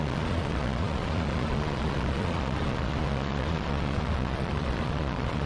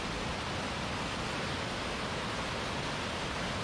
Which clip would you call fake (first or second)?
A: first